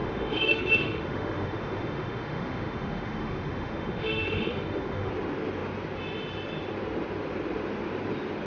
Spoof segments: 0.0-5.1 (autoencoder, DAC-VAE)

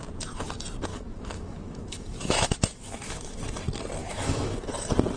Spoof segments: 0.9-3.4 (autoencoder, DAC-VAE); 4.0-4.7

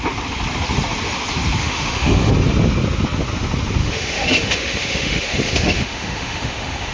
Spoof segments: 1.6-2.3 (autoencoder, DAC-VAE); 3.8-6.9

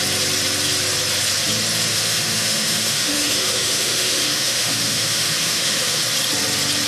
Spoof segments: 1.9-6.0 (autoencoder, DAC-VAE)